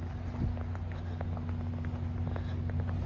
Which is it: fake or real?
real